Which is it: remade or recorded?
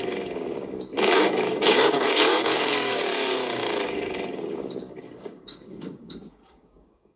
remade